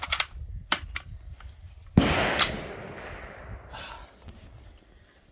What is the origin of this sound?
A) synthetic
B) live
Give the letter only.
B